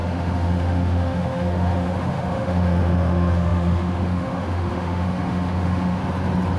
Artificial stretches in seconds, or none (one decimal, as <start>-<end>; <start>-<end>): 0.0-6.0